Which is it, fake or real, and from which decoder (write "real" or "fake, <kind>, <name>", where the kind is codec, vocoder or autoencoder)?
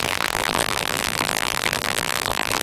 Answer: fake, vocoder, BigVGAN v2